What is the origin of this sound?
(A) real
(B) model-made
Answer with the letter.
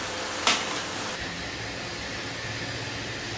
A